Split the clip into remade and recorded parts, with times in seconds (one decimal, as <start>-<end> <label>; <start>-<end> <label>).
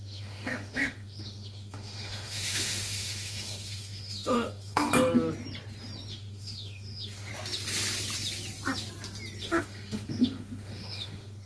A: 0.0-4.9 remade; 4.9-6.1 recorded; 6.1-7.3 remade; 7.3-9.4 recorded; 9.4-11.5 remade